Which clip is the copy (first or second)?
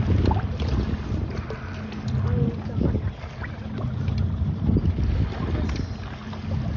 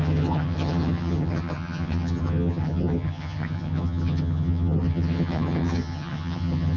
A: second